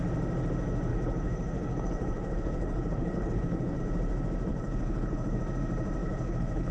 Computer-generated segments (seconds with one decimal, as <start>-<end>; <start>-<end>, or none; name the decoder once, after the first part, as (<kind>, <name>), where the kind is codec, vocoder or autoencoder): 0.9-3.8 (codec, HILCodec); 4.5-5.4; 6.0-6.7